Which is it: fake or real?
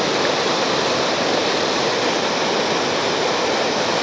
real